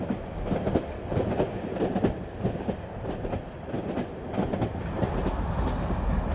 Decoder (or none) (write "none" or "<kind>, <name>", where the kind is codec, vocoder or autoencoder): none